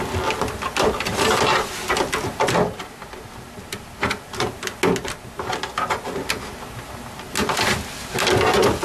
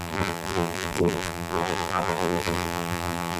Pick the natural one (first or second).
first